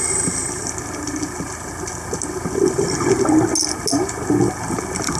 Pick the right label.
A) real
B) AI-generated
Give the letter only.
A